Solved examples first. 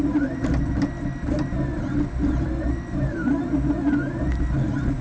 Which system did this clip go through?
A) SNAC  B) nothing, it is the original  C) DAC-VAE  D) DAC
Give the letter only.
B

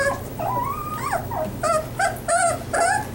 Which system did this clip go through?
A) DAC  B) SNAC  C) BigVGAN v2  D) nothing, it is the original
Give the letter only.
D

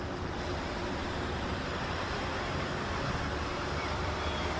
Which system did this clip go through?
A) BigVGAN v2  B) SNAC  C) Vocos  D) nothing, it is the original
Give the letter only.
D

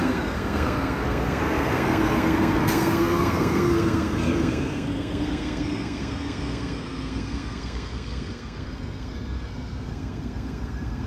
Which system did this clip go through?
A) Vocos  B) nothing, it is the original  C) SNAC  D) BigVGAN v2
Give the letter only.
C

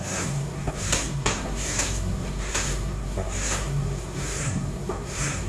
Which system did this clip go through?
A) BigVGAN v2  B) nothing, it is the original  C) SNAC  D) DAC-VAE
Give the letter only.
C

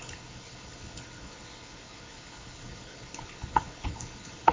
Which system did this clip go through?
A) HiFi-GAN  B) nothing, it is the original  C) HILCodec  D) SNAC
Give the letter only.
C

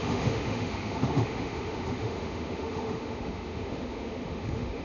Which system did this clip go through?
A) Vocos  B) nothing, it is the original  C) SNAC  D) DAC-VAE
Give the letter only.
D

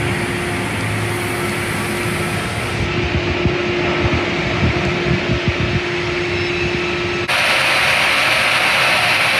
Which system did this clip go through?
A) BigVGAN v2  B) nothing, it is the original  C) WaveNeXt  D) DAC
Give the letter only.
B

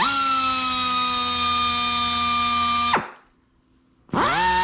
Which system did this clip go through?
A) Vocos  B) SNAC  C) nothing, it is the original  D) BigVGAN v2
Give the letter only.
C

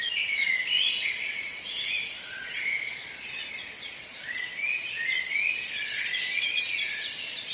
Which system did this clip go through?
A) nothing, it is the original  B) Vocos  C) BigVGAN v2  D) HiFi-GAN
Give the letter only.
B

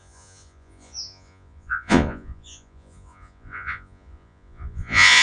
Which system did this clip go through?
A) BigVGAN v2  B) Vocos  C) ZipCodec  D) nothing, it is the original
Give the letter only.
B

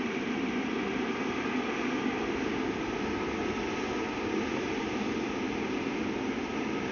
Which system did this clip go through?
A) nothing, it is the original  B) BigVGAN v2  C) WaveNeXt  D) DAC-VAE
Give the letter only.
A